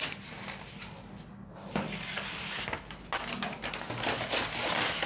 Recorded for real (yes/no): yes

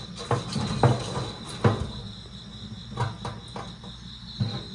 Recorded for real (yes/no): yes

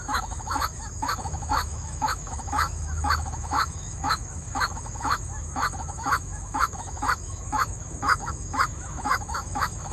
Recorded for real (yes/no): no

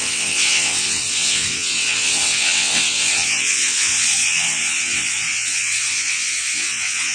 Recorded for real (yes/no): no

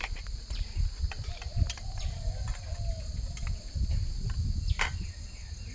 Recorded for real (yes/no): yes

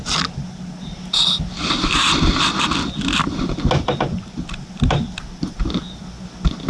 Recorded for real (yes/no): yes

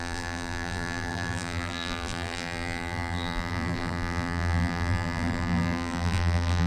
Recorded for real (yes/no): no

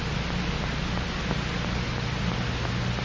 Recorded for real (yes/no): yes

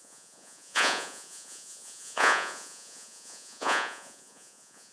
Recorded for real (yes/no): no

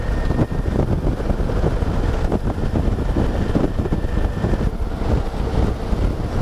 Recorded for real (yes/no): yes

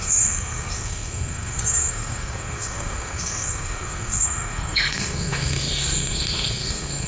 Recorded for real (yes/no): no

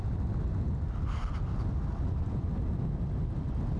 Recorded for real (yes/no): yes